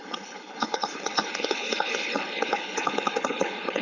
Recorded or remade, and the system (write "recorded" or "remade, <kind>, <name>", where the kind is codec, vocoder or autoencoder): remade, codec, HILCodec